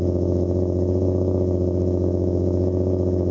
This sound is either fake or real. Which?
fake